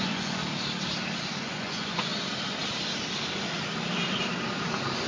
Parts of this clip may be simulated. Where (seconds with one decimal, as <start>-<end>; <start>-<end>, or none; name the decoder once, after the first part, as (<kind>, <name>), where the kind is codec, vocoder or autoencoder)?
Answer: 0.0-0.4 (vocoder, Vocos); 1.4-2.1